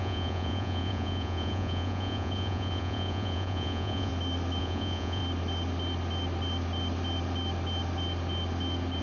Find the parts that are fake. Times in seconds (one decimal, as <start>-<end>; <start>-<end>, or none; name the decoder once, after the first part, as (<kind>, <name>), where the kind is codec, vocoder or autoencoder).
0.0-4.1 (vocoder, Vocos); 4.6-5.2